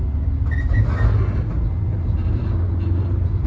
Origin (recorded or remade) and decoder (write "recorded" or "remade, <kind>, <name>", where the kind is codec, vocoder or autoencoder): recorded